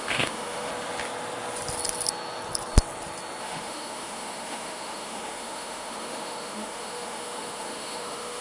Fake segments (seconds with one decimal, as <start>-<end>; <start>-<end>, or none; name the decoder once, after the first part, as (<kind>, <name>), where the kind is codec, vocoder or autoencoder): 0.0-0.7 (autoencoder, DAC-VAE); 3.4-8.4